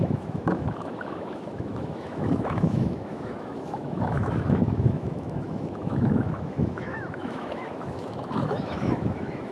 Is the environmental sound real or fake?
fake